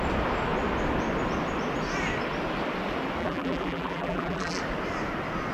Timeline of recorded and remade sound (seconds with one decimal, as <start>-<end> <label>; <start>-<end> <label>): 0.0-3.2 recorded; 3.2-4.6 remade; 4.6-5.5 recorded

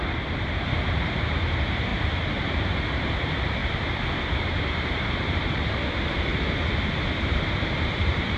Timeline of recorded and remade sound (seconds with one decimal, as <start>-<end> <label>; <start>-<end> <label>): 0.0-1.9 remade; 1.9-2.4 recorded; 2.4-3.6 remade; 3.6-4.2 recorded; 4.2-6.3 remade; 6.3-7.3 recorded; 7.3-8.4 remade

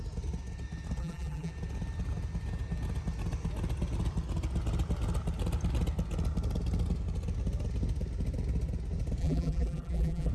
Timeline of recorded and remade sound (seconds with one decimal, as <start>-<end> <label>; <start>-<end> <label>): 0.0-1.0 recorded; 1.0-1.5 remade; 1.5-9.2 recorded; 9.2-10.3 remade

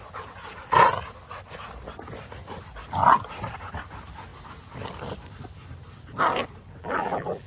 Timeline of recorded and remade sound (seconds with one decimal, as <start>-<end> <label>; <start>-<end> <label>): 0.0-6.8 recorded; 6.8-7.5 remade

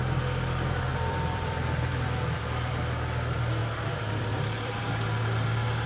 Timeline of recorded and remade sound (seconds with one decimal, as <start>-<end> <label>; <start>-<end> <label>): 0.0-0.9 recorded; 0.9-2.8 remade; 2.8-3.6 recorded; 3.6-4.8 remade; 4.8-5.9 recorded

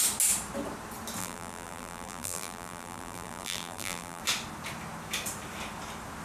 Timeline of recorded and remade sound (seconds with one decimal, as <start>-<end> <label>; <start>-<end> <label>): 0.0-1.2 recorded; 1.2-4.2 remade; 4.2-6.2 recorded